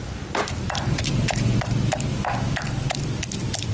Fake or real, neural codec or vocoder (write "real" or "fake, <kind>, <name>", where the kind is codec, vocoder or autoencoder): fake, vocoder, BigVGAN v2